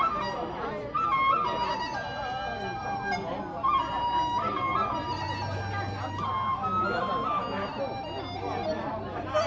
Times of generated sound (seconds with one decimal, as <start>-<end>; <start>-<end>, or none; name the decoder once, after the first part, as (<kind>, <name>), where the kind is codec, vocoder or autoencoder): none